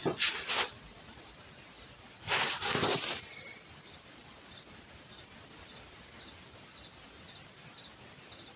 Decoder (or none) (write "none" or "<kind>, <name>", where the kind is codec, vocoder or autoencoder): none